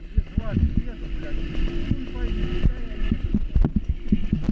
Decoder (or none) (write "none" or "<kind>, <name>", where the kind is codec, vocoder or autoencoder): none